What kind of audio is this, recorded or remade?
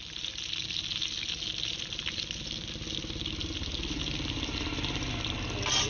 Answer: recorded